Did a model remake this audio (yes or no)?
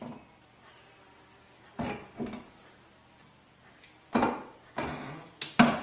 no